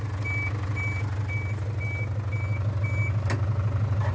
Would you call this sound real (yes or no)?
yes